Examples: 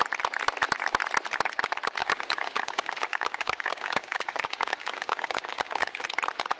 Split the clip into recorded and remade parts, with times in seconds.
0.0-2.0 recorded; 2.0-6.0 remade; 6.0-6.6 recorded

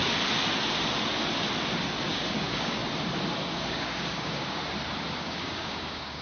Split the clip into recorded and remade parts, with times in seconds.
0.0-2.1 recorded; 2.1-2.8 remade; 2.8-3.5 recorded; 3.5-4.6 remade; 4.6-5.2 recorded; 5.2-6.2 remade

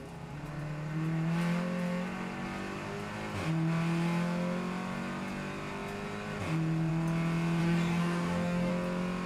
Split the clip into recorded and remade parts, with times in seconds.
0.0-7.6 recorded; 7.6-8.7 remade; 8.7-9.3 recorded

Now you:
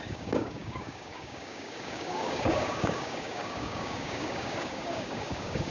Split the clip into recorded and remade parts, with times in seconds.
0.0-5.7 remade